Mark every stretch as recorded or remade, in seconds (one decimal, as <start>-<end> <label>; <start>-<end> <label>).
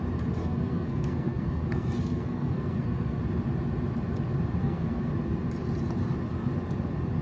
0.0-0.4 recorded; 0.4-3.2 remade; 3.2-4.6 recorded; 4.6-5.1 remade; 5.1-7.2 recorded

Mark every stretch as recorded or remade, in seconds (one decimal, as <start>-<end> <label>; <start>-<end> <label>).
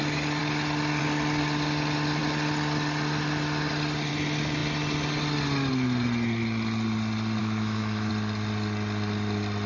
0.0-7.4 recorded; 7.4-8.1 remade; 8.1-9.7 recorded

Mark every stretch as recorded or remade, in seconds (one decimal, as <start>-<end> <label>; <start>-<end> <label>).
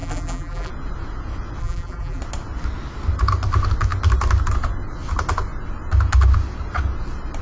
0.0-0.7 remade; 0.7-1.6 recorded; 1.6-2.2 remade; 2.2-7.4 recorded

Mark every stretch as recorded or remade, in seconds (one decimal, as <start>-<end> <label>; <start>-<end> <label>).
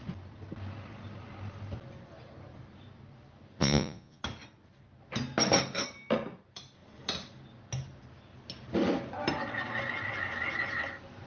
0.0-3.6 recorded; 3.6-4.2 remade; 4.2-11.3 recorded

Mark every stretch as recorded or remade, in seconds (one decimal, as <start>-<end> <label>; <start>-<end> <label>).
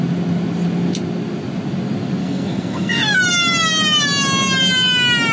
0.0-2.2 recorded; 2.2-3.0 remade; 3.0-5.3 recorded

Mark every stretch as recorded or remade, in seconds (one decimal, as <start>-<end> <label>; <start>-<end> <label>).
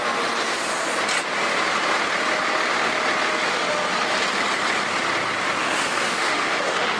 0.0-5.6 recorded; 5.6-7.0 remade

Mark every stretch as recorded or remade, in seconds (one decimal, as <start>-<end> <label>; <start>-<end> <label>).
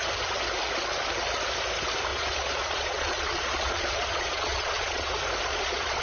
0.0-2.1 recorded; 2.1-5.1 remade; 5.1-5.5 recorded; 5.5-6.0 remade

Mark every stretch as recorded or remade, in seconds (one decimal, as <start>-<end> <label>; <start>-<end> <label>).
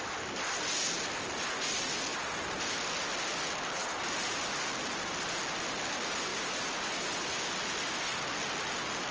0.0-2.1 recorded; 2.1-2.6 remade; 2.6-3.8 recorded; 3.8-4.5 remade; 4.5-6.3 recorded; 6.3-7.4 remade; 7.4-9.1 recorded